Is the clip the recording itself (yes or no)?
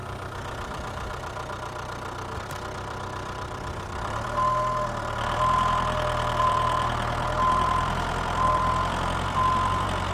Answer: no